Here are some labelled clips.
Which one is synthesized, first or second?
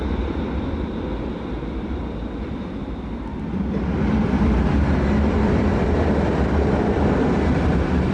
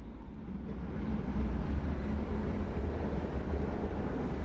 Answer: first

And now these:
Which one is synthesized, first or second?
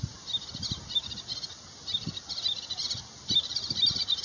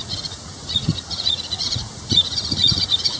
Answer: second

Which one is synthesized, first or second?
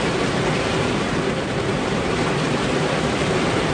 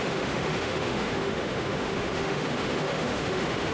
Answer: second